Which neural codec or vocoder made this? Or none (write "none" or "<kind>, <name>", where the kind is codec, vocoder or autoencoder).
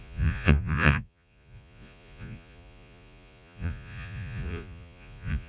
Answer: vocoder, Vocos